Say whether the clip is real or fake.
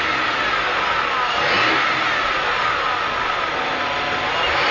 real